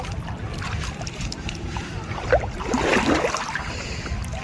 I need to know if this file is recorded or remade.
recorded